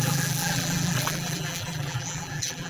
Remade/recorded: remade